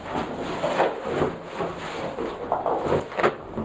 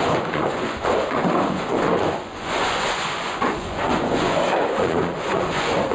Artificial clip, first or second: second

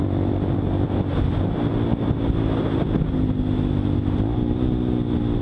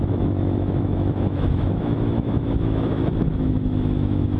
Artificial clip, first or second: second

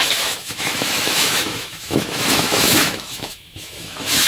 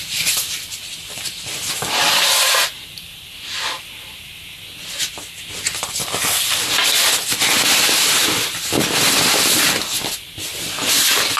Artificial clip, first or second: first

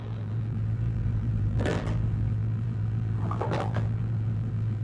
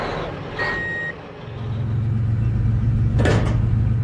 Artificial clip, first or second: first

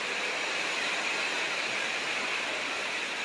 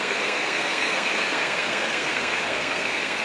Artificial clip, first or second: second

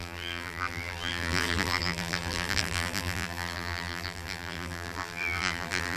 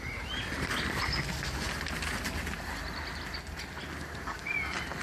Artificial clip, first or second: first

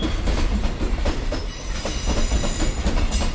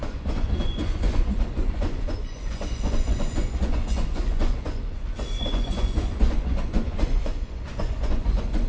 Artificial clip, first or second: second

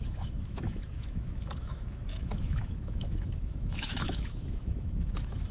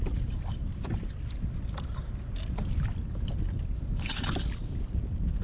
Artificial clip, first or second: first